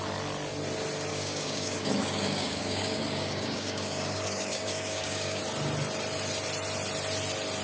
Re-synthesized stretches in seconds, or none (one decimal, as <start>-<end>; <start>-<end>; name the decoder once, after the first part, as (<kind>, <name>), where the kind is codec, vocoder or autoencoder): 1.1-5.4 (codec, DAC)